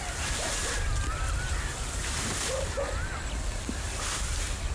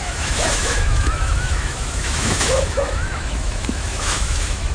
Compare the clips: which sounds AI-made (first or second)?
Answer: second